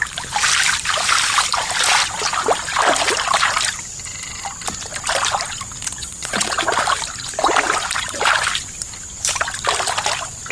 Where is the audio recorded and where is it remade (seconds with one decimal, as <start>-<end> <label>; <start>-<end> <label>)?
0.0-6.0 recorded; 6.0-6.6 remade; 6.6-10.5 recorded